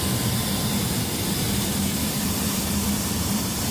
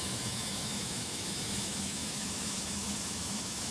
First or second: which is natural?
first